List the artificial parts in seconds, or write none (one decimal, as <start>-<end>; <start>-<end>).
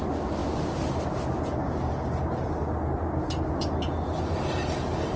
none